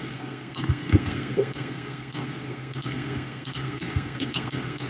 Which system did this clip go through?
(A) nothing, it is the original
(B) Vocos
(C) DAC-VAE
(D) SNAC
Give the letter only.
D